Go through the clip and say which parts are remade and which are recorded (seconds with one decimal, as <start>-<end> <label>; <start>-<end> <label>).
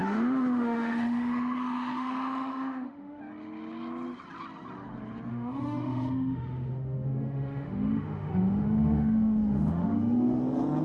0.0-3.2 remade; 3.2-5.3 recorded; 5.3-10.4 remade; 10.4-10.8 recorded